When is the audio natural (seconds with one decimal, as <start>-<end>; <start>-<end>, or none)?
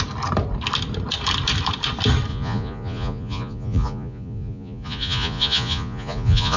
0.0-2.3